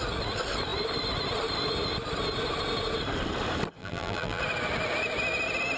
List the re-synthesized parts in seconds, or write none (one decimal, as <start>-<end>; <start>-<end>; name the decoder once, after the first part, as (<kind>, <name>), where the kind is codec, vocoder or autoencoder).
3.8-4.4 (vocoder, BigVGAN v2)